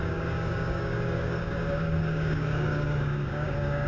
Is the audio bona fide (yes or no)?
no